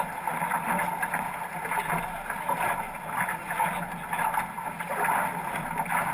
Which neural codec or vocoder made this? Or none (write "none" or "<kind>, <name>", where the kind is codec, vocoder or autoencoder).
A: none